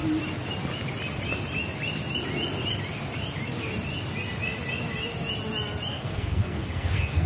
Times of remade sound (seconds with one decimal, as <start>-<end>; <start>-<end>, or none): 5.9-7.3